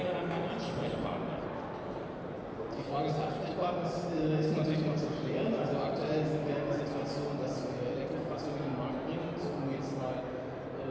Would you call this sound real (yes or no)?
yes